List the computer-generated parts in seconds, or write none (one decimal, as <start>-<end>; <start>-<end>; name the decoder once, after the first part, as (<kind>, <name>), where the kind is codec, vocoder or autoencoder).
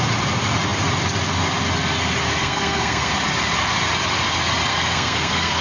2.4-3.1 (codec, SNAC); 4.7-5.6